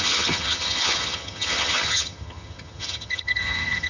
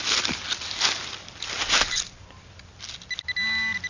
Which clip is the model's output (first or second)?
first